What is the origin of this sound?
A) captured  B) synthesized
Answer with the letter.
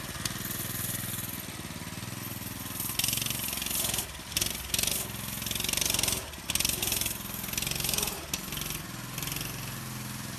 A